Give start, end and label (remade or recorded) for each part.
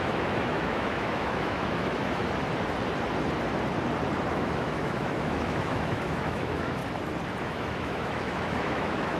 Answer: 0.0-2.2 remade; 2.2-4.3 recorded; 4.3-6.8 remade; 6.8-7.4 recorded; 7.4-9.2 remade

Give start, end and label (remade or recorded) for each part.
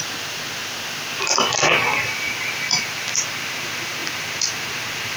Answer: 0.0-5.2 recorded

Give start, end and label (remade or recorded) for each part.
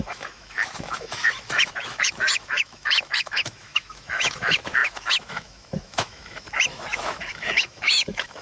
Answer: 0.0-8.4 remade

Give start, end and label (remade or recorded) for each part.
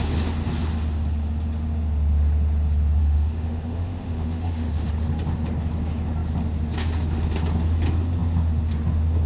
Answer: 0.0-3.0 recorded; 3.0-4.9 remade; 4.9-9.3 recorded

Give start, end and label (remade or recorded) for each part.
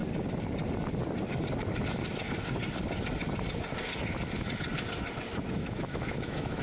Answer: 0.0-5.6 recorded; 5.6-6.6 remade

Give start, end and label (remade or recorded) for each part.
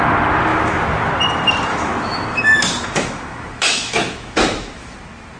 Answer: 0.0-0.5 recorded; 0.5-1.1 remade; 1.1-1.7 recorded; 1.7-4.9 remade; 4.9-5.4 recorded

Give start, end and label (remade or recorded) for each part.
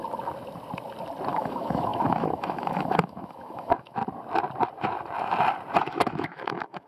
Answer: 0.0-1.3 recorded; 1.3-4.0 remade; 4.0-5.8 recorded; 5.8-6.9 remade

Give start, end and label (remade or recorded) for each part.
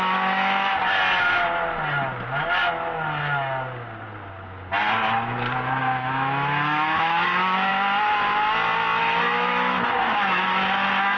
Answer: 0.0-0.7 remade; 0.7-5.8 recorded; 5.8-7.7 remade; 7.7-9.0 recorded; 9.0-11.2 remade